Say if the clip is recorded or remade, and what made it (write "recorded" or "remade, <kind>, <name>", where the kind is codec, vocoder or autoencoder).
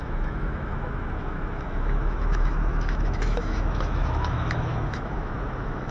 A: remade, autoencoder, DAC-VAE